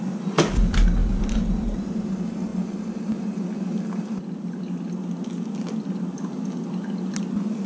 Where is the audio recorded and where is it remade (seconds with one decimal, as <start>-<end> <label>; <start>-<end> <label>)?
0.0-1.0 recorded; 1.0-2.1 remade; 2.1-7.7 recorded